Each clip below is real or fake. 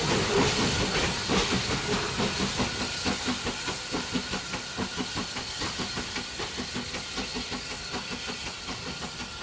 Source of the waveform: real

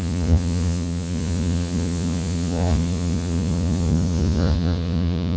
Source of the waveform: fake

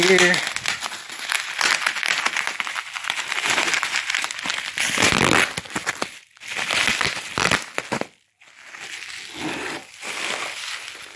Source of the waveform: real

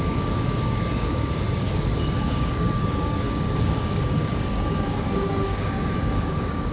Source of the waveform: fake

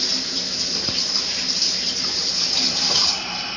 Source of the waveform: fake